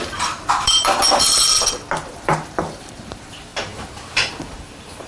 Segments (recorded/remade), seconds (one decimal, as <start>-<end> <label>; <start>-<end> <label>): 0.0-1.4 remade; 1.4-2.1 recorded; 2.1-5.1 remade